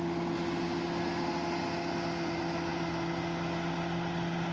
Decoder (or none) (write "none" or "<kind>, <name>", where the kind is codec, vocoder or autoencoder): none